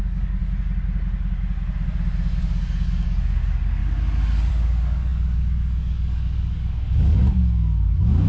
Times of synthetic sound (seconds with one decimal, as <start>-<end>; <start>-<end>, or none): 0.0-0.4; 2.4-3.8; 4.5-8.3